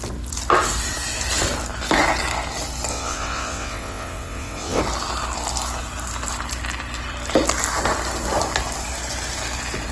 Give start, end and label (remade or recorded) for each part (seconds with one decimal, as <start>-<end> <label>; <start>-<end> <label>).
0.0-2.9 recorded; 2.9-4.8 remade; 4.8-9.9 recorded